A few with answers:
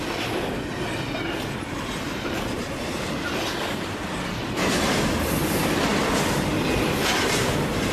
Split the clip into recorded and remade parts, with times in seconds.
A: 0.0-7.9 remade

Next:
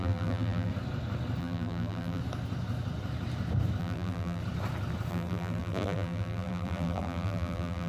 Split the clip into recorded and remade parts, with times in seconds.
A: 0.0-0.7 remade; 0.7-1.4 recorded; 1.4-2.2 remade; 2.2-3.8 recorded; 3.8-4.4 remade; 4.4-5.1 recorded; 5.1-7.9 remade

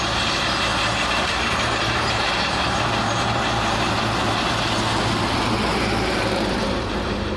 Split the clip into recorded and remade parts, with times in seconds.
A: 0.0-0.7 recorded; 0.7-4.0 remade; 4.0-5.7 recorded; 5.7-7.4 remade

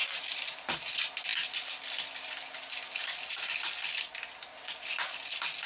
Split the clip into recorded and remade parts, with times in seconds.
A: 0.0-0.9 remade; 0.9-5.7 recorded

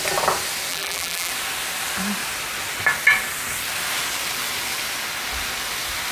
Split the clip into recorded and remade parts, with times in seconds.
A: 0.0-0.7 recorded; 0.7-1.3 remade; 1.3-6.1 recorded

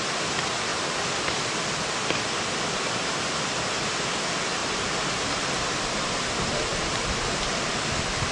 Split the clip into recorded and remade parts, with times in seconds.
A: 0.0-4.6 recorded; 4.6-6.1 remade; 6.1-6.7 recorded; 6.7-7.7 remade; 7.7-8.3 recorded

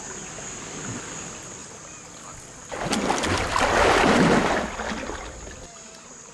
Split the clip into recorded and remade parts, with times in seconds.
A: 0.0-6.3 recorded